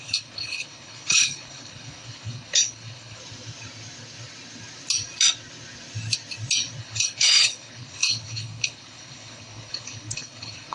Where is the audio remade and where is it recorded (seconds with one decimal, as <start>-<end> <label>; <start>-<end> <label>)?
0.0-3.2 remade; 3.2-6.8 recorded; 6.8-10.7 remade